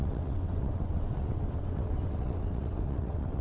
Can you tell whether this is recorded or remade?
remade